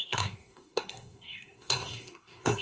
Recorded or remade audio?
remade